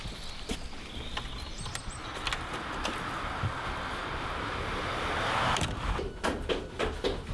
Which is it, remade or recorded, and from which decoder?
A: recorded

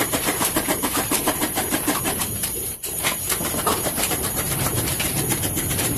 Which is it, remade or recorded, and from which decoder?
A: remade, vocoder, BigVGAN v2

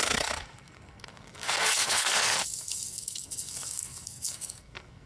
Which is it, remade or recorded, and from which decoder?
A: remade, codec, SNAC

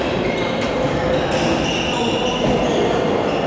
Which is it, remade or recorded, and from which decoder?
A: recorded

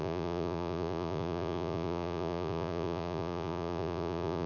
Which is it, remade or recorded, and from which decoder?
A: remade, vocoder, Vocos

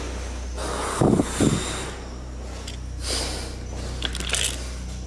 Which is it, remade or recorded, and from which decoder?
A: recorded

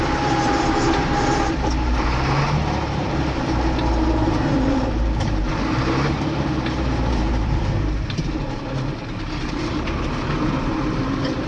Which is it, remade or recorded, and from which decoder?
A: remade, vocoder, BigVGAN v2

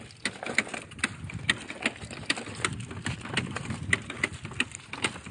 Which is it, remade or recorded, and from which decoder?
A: recorded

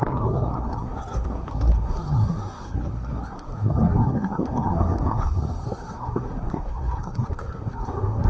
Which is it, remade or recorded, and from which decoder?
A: remade, codec, SNAC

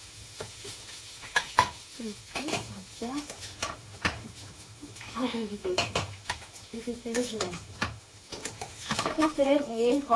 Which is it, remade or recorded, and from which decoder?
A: remade, autoencoder, DAC-VAE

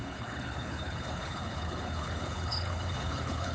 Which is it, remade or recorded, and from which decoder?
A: remade, codec, HILCodec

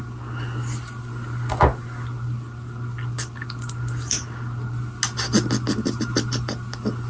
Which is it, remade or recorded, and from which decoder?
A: recorded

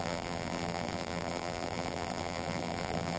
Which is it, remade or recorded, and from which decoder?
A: remade, vocoder, BigVGAN v2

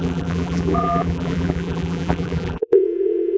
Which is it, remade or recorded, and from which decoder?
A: remade, vocoder, BigVGAN v2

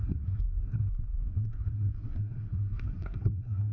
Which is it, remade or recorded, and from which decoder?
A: remade, codec, SNAC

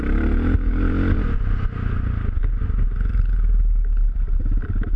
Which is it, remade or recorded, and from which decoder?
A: recorded